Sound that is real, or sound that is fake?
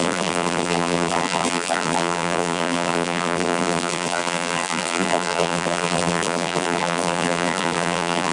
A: fake